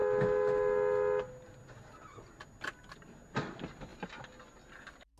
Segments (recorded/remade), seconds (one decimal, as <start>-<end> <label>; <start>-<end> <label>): 0.0-5.2 recorded